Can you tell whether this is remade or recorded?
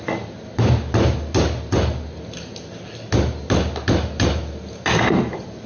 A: recorded